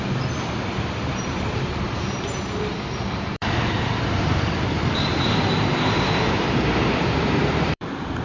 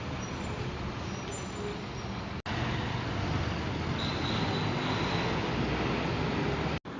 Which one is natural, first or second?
second